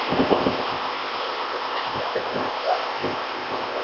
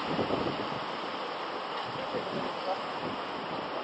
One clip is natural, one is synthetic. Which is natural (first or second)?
second